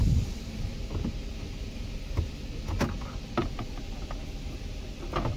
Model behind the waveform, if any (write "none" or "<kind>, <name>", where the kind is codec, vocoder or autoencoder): none